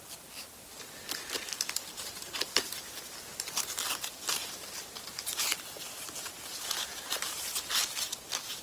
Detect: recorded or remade recorded